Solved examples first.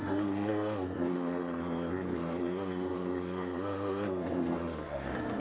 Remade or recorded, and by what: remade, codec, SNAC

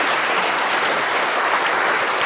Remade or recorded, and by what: recorded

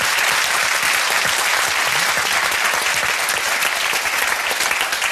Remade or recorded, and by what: recorded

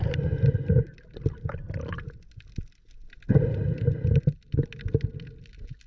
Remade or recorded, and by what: recorded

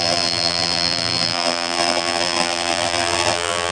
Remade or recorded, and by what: remade, vocoder, BigVGAN v2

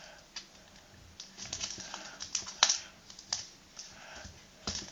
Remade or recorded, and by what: recorded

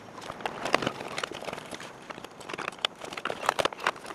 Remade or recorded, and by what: remade, vocoder, BigVGAN v2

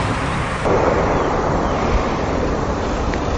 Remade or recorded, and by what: remade, vocoder, BigVGAN v2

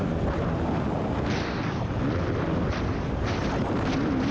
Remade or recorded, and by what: recorded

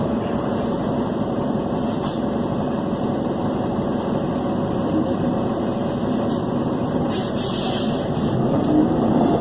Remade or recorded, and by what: remade, vocoder, BigVGAN v2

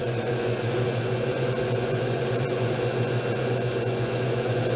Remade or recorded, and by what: remade, vocoder, Vocos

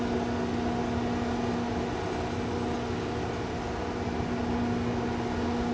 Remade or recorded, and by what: recorded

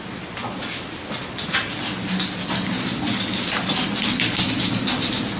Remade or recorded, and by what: recorded